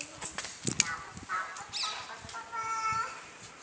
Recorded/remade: recorded